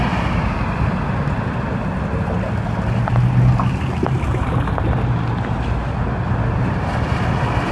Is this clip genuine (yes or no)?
yes